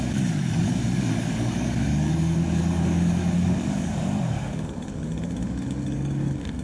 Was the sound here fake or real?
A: fake